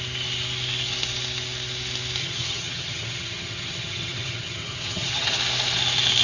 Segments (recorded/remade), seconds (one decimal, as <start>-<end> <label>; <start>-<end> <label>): 0.0-2.2 recorded; 2.2-5.4 remade; 5.4-6.2 recorded